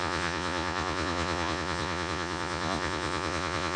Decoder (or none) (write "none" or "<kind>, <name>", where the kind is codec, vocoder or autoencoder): vocoder, Vocos